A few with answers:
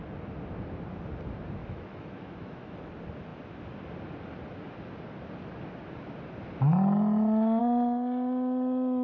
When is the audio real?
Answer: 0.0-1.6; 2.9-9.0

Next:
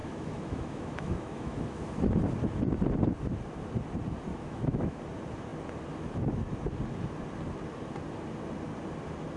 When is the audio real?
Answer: 2.1-4.3; 5.0-9.4

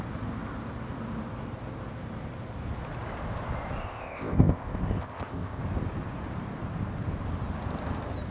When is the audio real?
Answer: 0.0-3.8; 5.6-8.3

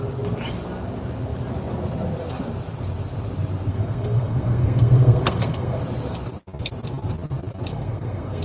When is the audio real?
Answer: 0.0-3.7; 5.8-7.7

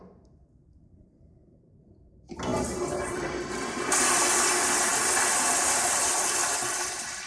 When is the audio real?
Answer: 0.0-7.3

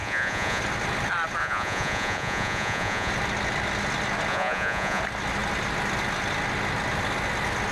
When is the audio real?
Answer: 0.6-1.4; 3.1-4.3; 5.0-7.7